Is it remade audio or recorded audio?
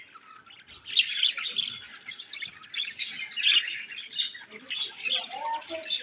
recorded